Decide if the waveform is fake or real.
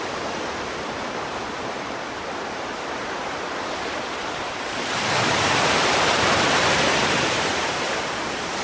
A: fake